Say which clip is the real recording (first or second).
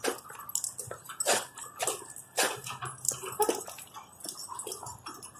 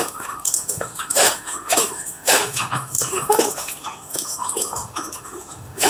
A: first